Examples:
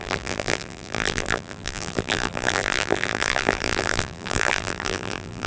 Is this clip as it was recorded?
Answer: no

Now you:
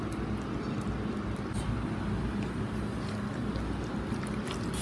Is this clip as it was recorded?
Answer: yes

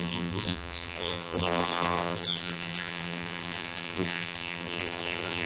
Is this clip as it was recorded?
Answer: no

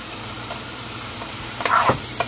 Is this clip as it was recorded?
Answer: no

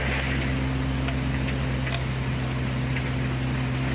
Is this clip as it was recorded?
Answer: yes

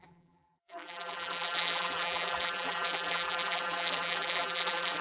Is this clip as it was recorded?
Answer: no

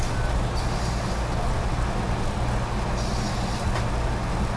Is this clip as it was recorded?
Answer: yes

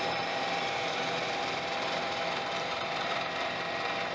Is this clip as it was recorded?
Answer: no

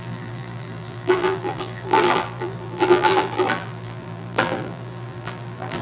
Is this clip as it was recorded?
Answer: no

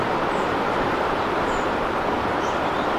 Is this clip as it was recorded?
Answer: no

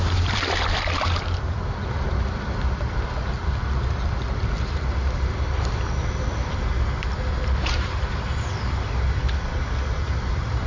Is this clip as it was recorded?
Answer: no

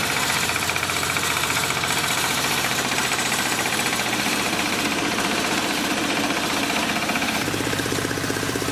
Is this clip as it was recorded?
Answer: no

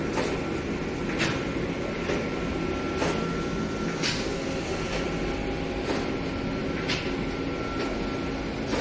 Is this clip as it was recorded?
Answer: yes